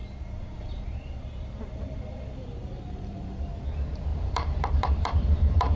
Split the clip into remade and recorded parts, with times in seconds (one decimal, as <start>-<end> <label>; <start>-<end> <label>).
0.0-3.5 remade; 3.5-4.1 recorded; 4.1-5.8 remade